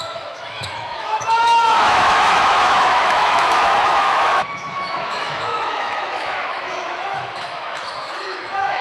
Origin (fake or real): fake